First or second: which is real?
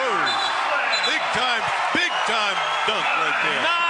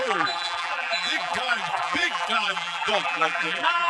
first